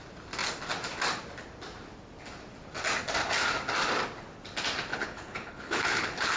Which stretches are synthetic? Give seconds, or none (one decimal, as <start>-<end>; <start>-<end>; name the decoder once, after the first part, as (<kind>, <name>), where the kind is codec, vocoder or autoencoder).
4.9-6.4 (codec, HILCodec)